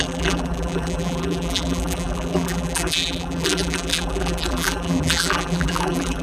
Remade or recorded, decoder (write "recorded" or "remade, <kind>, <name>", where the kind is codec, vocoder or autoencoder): remade, vocoder, BigVGAN v2